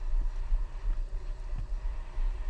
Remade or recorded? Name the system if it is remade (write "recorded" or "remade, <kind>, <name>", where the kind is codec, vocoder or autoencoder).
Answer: recorded